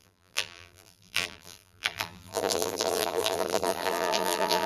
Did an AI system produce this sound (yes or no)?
yes